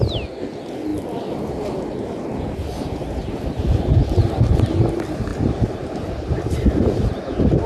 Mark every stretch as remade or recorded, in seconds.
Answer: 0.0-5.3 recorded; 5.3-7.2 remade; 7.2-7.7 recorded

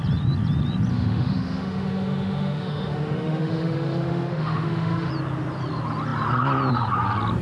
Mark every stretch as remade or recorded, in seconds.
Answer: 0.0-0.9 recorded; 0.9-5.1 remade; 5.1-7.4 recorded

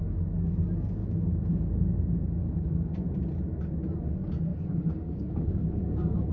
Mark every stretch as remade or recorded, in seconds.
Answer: 0.0-1.0 recorded; 1.0-2.0 remade; 2.0-2.4 recorded; 2.4-2.9 remade; 2.9-4.5 recorded; 4.5-6.3 remade

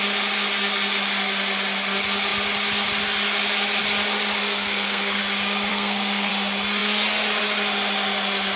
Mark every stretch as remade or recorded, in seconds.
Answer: 0.0-4.4 recorded; 4.4-5.2 remade; 5.2-5.7 recorded; 5.7-6.3 remade; 6.3-8.6 recorded

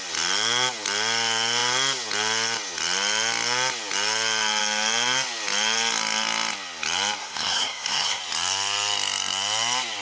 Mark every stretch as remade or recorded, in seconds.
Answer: 0.0-7.2 recorded; 7.2-8.2 remade; 8.2-10.0 recorded

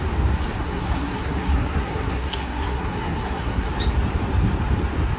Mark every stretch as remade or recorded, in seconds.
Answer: 0.0-0.6 recorded; 0.6-3.7 remade; 3.7-5.2 recorded

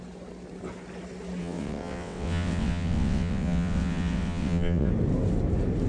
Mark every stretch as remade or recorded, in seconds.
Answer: 0.0-1.4 recorded; 1.4-4.9 remade; 4.9-5.9 recorded

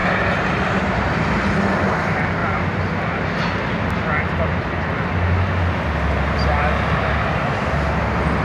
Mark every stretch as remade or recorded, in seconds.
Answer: 0.0-8.4 recorded